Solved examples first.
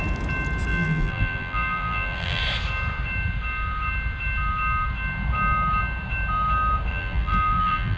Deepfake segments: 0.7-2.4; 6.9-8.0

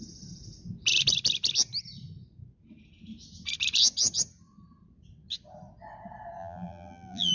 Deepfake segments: 6.4-7.3

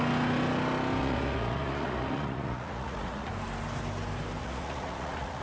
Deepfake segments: 1.0-3.3; 4.4-5.4

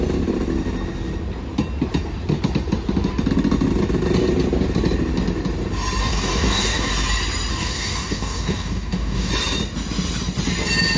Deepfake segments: 6.0-6.9; 7.5-9.3